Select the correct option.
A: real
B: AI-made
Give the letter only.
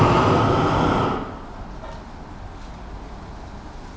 A